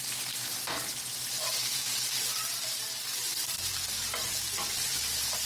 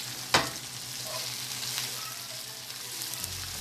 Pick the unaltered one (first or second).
second